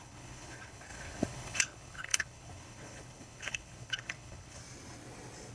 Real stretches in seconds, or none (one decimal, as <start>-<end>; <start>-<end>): 4.6-5.5